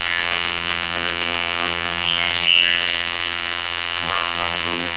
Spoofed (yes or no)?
yes